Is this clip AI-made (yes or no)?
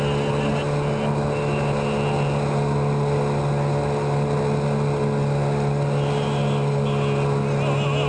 no